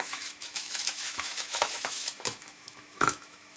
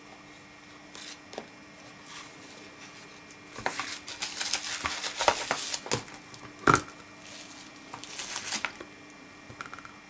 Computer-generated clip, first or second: first